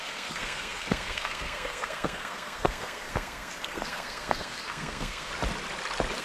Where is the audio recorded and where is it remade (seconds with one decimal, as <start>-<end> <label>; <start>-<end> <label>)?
0.0-5.3 remade; 5.3-6.2 recorded